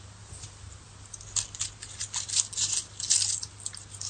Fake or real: real